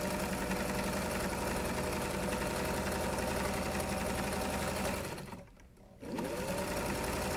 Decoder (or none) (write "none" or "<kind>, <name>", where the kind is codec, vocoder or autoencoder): none